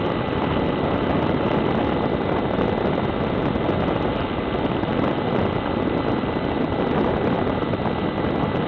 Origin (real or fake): real